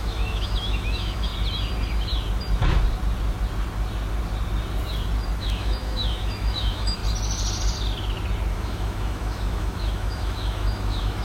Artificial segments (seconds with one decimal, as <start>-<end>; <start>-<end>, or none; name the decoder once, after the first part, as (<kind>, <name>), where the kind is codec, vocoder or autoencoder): 0.0-1.3 (autoencoder, DAC-VAE); 5.4-7.0; 8.5-11.2

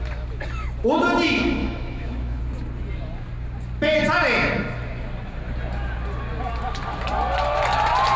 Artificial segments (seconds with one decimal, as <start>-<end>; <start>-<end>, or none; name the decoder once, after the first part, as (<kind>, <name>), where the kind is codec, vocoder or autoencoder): 1.6-2.4 (autoencoder, DAC-VAE)

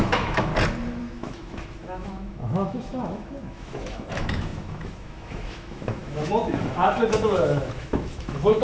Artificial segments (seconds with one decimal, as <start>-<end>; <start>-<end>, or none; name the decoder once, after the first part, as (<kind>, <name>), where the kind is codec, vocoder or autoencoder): 0.0-0.5 (autoencoder, DAC-VAE); 1.0-8.6